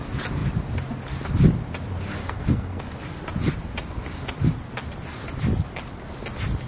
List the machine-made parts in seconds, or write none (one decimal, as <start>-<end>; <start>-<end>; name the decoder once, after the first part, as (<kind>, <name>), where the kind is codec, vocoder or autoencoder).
2.2-2.8 (codec, SNAC)